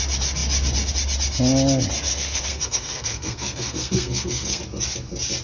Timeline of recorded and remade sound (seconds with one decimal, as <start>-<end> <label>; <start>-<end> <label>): 0.0-2.1 recorded; 2.1-4.6 remade; 4.6-5.4 recorded